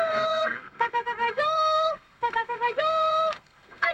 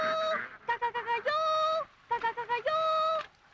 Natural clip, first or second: second